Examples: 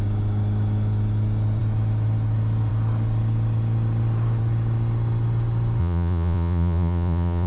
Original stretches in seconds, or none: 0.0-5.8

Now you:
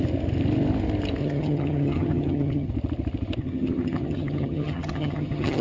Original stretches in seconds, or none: 0.0-1.2; 2.7-3.4

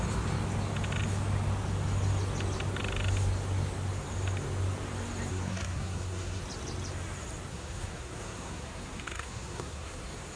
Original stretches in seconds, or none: 0.0-5.3; 6.4-7.5; 10.0-10.4

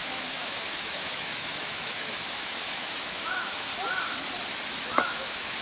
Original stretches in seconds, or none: 3.7-4.7

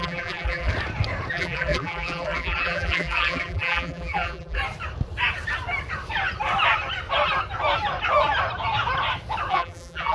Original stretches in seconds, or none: 0.7-1.3; 4.6-9.5

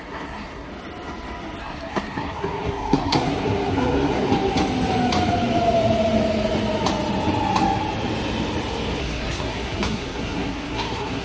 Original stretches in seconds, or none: 0.7-1.6; 4.3-9.0

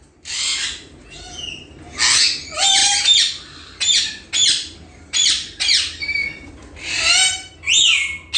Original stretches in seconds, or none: 0.0-2.8; 6.5-8.4